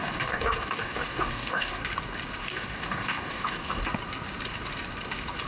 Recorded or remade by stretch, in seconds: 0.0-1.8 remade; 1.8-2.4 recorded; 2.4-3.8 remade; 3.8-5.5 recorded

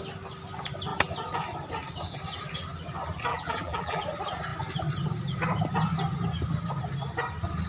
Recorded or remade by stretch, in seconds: 0.0-3.3 recorded; 3.3-4.0 remade; 4.0-7.7 recorded

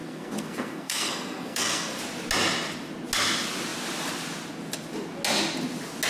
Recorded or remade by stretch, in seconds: 0.0-2.0 remade; 2.0-6.1 recorded

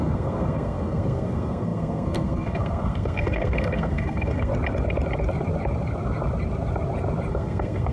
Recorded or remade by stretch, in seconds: 0.0-4.5 remade; 4.5-7.3 recorded; 7.3-7.9 remade

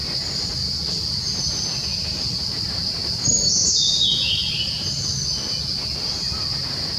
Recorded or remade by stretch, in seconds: 0.0-3.0 recorded; 3.0-3.8 remade; 3.8-7.0 recorded

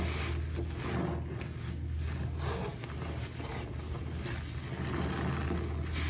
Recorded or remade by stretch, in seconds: 0.0-6.1 recorded